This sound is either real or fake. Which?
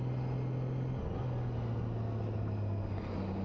real